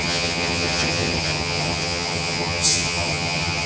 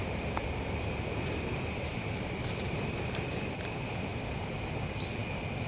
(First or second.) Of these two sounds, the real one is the second